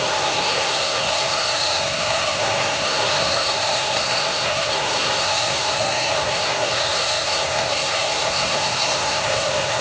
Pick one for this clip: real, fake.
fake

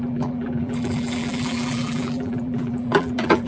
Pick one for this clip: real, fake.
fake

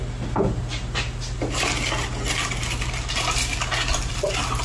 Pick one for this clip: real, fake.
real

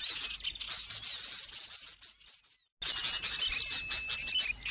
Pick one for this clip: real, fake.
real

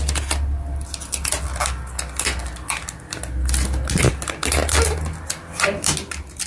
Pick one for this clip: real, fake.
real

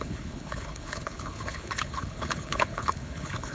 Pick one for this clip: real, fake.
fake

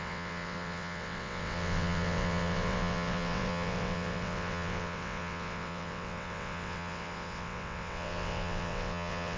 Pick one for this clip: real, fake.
fake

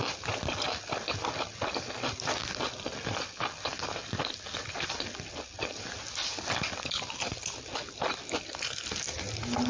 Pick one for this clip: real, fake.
real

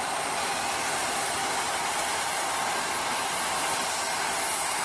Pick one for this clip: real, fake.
real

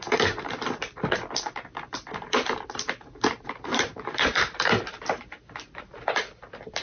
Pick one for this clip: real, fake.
fake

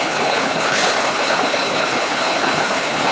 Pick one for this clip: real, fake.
fake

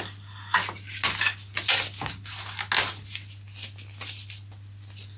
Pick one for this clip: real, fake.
real